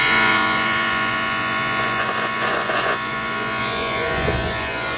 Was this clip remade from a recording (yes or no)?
yes